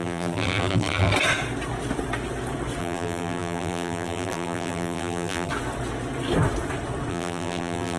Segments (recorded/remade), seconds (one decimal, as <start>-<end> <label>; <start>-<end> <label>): 0.0-1.1 remade; 1.1-2.8 recorded; 2.8-5.5 remade; 5.5-7.1 recorded; 7.1-8.0 remade

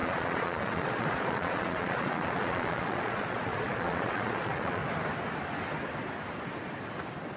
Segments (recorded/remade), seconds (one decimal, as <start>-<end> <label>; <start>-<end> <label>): 0.0-4.8 remade; 4.8-7.4 recorded

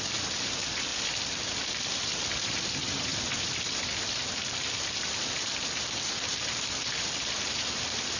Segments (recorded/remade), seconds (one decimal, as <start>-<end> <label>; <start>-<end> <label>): 0.0-8.2 recorded

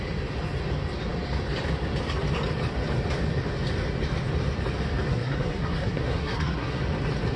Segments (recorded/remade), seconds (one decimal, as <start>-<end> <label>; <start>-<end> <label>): 0.0-5.1 recorded; 5.1-6.8 remade; 6.8-7.4 recorded

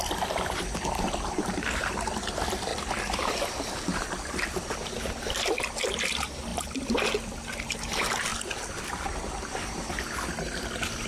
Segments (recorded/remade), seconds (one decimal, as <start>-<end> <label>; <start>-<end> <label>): 0.0-11.1 recorded